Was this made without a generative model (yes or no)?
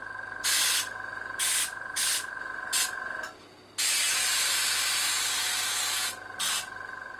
yes